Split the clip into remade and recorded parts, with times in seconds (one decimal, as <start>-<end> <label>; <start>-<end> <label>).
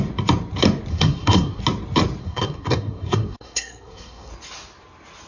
0.0-0.9 recorded; 0.9-1.6 remade; 1.6-2.2 recorded; 2.2-4.3 remade; 4.3-5.3 recorded